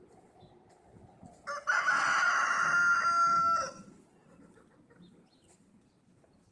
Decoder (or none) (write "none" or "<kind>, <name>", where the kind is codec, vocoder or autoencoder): none